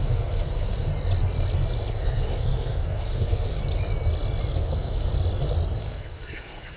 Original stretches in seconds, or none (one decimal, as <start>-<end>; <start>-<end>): 0.9-1.9; 3.6-4.5; 5.1-5.8